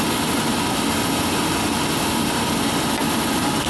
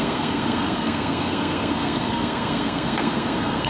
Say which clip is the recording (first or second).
first